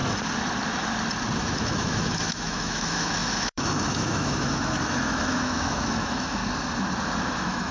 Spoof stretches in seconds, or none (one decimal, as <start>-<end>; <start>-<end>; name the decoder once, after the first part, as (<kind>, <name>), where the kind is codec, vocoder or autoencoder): 1.4-6.4 (autoencoder, DAC-VAE); 7.2-7.7